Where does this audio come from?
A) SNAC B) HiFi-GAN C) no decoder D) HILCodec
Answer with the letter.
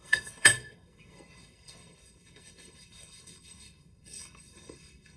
A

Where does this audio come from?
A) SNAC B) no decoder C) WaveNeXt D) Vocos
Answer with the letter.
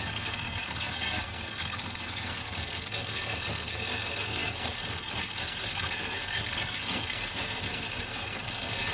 A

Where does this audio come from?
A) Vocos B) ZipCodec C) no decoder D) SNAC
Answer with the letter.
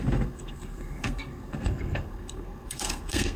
D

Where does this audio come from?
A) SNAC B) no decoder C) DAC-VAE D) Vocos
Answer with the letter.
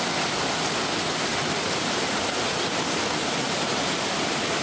B